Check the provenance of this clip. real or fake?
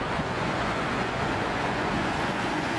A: fake